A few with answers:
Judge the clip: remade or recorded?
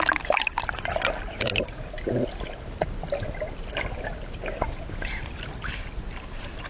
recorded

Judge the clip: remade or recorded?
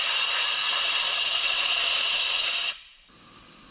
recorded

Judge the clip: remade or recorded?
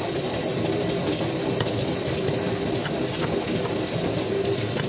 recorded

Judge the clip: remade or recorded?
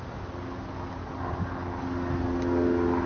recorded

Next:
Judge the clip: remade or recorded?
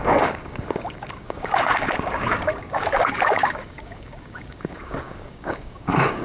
remade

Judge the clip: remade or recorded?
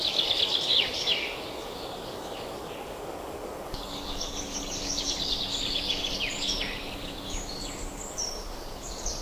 remade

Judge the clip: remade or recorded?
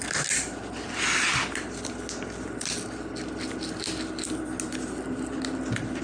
recorded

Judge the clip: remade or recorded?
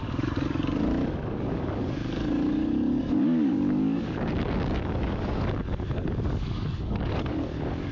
remade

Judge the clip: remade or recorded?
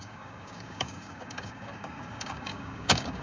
remade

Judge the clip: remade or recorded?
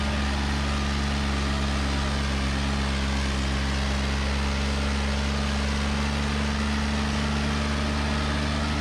recorded